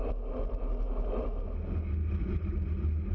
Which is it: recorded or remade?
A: recorded